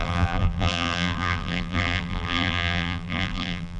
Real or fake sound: fake